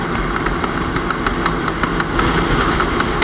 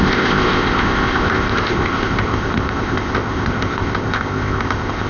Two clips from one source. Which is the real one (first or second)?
first